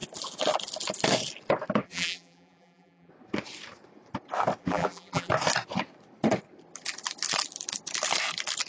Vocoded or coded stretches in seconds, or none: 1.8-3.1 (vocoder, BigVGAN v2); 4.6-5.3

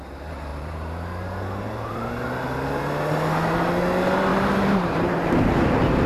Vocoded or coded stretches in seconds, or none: 0.5-1.9 (vocoder, BigVGAN v2); 4.3-5.0

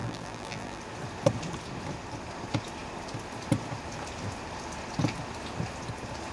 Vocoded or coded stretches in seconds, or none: 0.0-0.8 (vocoder, BigVGAN v2)

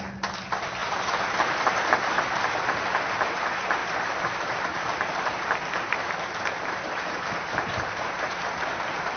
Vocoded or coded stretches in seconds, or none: 0.8-2.6 (vocoder, BigVGAN v2); 3.8-8.6

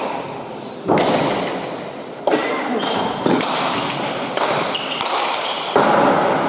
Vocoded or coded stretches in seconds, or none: 2.4-5.7 (vocoder, BigVGAN v2)